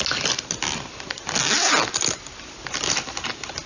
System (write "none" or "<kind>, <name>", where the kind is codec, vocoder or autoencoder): none